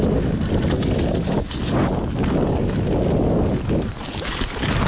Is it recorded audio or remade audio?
recorded